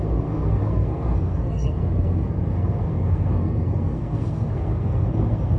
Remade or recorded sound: remade